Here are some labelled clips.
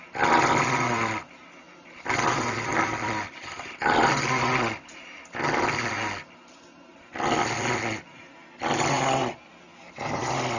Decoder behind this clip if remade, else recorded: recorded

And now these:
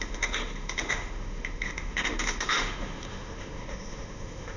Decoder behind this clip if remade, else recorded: remade, autoencoder, DAC-VAE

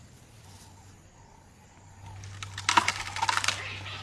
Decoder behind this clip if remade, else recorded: recorded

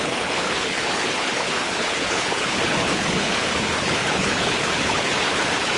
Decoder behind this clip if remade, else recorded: remade, codec, HILCodec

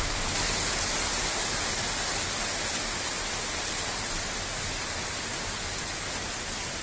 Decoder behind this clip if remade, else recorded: recorded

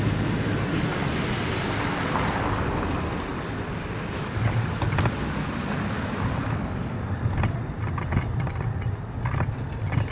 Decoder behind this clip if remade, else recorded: recorded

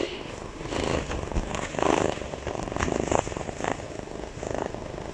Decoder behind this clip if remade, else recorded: remade, autoencoder, DAC-VAE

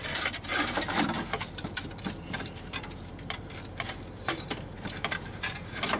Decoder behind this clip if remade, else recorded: remade, vocoder, BigVGAN v2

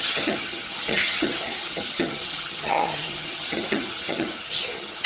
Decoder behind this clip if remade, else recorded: remade, vocoder, HiFi-GAN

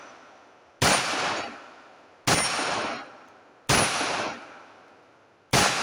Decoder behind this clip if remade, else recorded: recorded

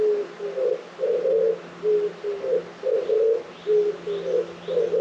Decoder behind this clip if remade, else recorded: recorded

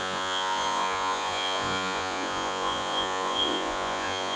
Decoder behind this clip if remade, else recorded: remade, vocoder, Vocos